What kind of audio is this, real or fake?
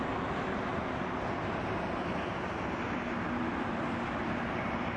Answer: real